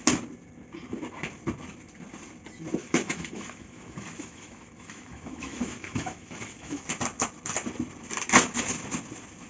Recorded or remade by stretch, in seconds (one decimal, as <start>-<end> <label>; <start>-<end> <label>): 0.0-2.8 recorded; 2.8-6.8 remade; 6.8-9.5 recorded